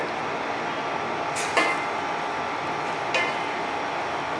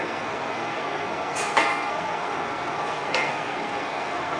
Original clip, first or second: first